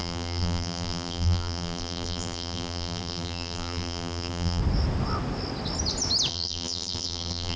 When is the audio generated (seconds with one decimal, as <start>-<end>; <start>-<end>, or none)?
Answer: 0.0-4.6; 6.3-7.6